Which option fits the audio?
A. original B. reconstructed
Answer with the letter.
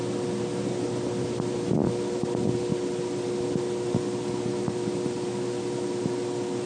B